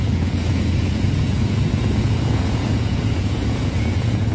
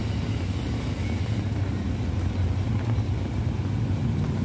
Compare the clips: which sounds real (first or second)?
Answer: second